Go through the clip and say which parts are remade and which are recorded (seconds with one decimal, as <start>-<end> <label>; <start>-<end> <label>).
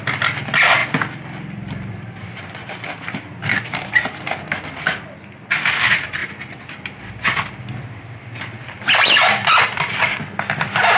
0.0-0.8 recorded; 0.8-4.0 remade; 4.0-6.2 recorded; 6.2-9.6 remade; 9.6-11.0 recorded